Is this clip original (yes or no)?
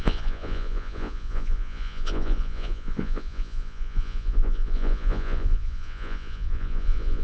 no